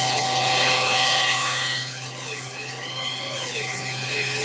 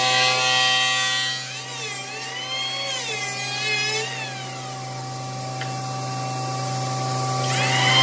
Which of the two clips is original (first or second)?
second